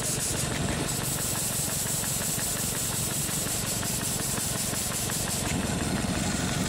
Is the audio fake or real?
fake